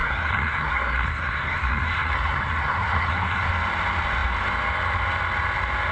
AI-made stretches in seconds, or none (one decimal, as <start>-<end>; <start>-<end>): 0.0-3.5